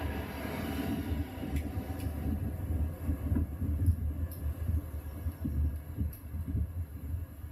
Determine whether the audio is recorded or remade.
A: recorded